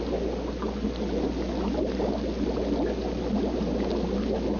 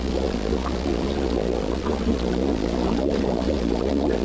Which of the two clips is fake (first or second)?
second